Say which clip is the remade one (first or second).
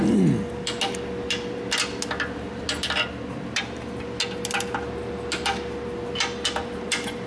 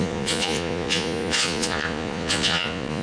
second